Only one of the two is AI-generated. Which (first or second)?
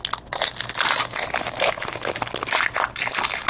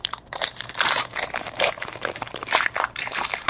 second